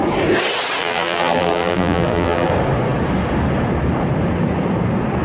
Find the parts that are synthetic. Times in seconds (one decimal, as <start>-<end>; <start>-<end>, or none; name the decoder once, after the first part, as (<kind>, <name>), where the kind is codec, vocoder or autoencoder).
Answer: 0.8-2.5 (vocoder, BigVGAN v2)